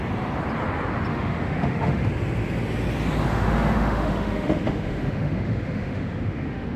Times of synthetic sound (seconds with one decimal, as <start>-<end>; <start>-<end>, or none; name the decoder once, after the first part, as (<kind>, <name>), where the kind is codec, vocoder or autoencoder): 1.1-2.1 (autoencoder, DAC-VAE); 3.3-6.8